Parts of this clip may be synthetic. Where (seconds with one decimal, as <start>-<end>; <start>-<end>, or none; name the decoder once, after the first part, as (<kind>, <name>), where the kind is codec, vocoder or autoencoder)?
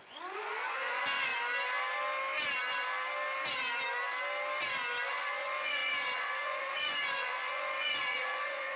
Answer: 0.0-1.3 (vocoder, Vocos); 5.1-8.8